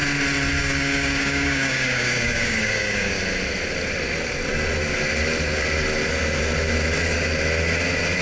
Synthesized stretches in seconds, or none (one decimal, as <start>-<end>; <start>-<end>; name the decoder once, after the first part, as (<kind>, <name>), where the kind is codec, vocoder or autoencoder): 0.6-3.2 (codec, DAC)